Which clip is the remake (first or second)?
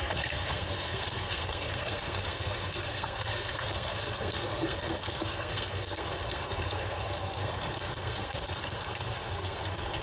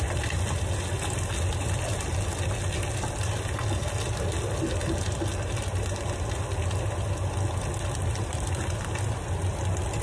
first